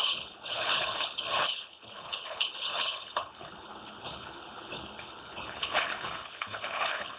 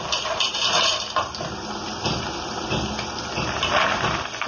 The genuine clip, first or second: second